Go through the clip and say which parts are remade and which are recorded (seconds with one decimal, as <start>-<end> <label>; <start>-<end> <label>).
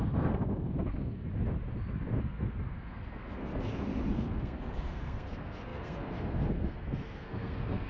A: 0.0-1.3 remade; 1.3-2.2 recorded; 2.2-3.5 remade; 3.5-4.1 recorded; 4.1-7.9 remade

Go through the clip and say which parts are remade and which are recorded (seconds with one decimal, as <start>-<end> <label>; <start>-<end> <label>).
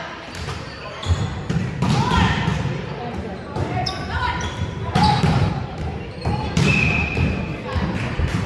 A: 0.0-1.6 remade; 1.6-2.8 recorded; 2.8-8.5 remade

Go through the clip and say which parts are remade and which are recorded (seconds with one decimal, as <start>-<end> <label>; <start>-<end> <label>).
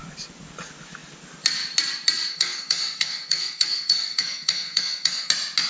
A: 0.0-2.3 recorded; 2.3-5.3 remade; 5.3-5.7 recorded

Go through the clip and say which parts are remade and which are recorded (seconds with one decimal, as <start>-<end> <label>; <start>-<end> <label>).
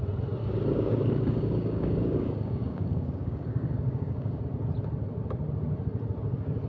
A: 0.0-0.4 recorded; 0.4-4.4 remade; 4.4-6.7 recorded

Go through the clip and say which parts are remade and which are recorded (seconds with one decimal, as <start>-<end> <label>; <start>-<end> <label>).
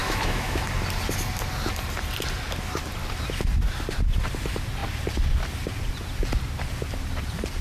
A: 0.0-0.6 remade; 0.6-7.6 recorded